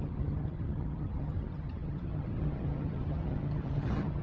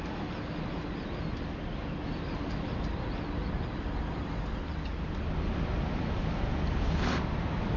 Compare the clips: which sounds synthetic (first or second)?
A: first